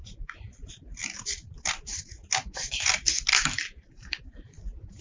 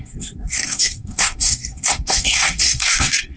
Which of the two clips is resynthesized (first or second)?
second